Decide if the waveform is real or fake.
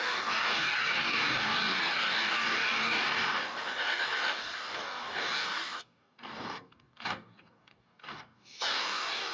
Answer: fake